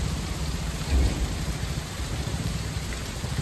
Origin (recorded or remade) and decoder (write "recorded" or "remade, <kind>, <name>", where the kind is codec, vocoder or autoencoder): remade, vocoder, BigVGAN v2